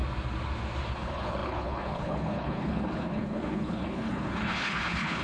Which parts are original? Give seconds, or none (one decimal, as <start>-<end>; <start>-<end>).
0.0-0.9